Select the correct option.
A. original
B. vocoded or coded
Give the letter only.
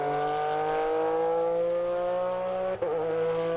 A